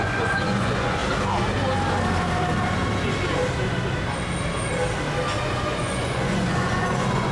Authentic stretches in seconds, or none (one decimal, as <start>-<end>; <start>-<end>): 1.0-5.4